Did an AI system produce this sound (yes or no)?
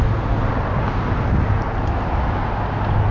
no